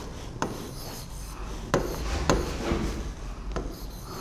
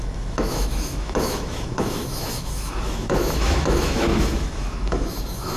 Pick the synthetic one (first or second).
second